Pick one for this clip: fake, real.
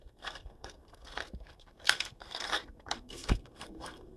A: fake